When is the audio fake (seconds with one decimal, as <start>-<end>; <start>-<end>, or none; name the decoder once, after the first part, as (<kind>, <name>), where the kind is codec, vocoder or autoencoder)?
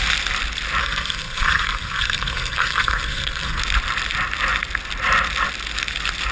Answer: 0.8-3.6 (codec, SNAC)